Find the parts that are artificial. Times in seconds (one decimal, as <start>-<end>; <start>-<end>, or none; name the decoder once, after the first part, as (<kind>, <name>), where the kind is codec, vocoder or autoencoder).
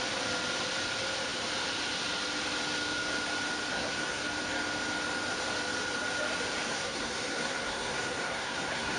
3.7-4.2 (codec, SNAC); 6.7-9.0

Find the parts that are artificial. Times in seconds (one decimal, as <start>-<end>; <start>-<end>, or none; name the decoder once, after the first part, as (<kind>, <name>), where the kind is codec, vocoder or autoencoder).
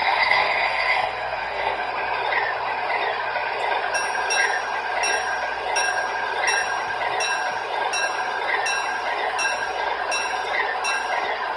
0.0-1.9 (codec, SNAC)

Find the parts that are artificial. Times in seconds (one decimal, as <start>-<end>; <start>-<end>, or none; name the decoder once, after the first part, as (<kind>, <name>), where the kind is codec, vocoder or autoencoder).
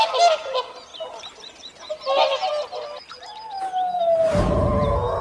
none